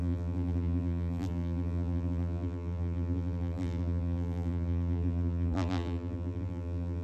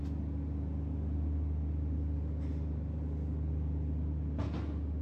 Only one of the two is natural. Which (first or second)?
second